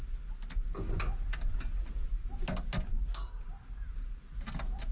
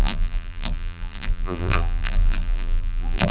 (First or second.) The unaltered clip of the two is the first